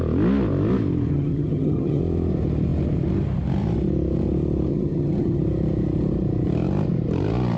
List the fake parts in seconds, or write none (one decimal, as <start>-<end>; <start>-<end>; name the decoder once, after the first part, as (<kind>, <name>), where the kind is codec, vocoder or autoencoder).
1.1-2.0 (vocoder, HiFi-GAN); 4.7-5.4